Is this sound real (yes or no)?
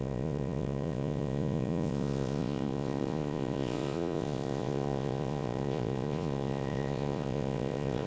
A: no